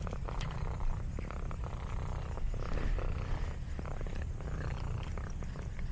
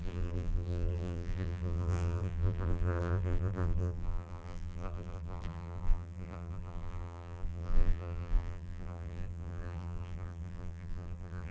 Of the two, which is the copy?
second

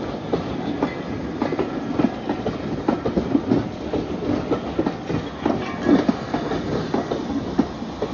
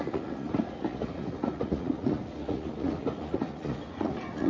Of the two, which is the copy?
second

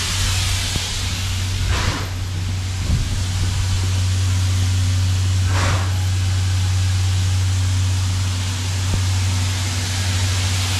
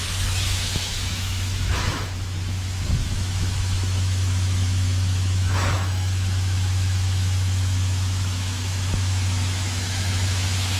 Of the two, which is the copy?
second